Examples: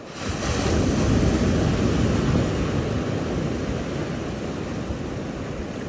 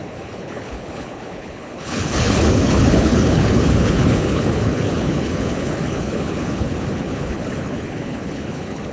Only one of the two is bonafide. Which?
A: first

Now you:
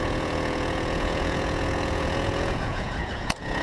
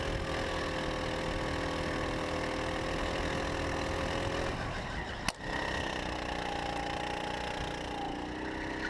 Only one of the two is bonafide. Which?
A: second